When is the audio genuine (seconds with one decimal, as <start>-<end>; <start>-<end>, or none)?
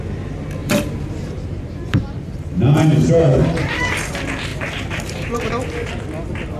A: 0.0-0.6; 3.8-4.5; 5.5-6.6